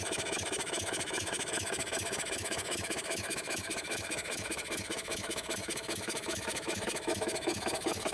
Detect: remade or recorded remade